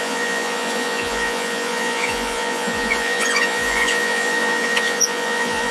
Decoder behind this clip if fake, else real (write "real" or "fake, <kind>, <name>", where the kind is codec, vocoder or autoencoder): fake, vocoder, Vocos